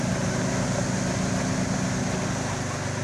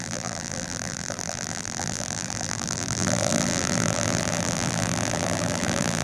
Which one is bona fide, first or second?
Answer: first